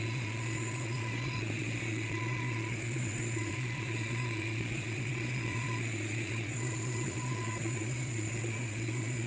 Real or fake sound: fake